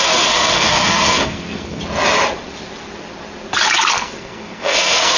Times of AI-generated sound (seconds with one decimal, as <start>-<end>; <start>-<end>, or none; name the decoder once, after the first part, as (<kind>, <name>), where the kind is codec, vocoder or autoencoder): 0.0-1.8 (codec, SNAC); 3.9-5.2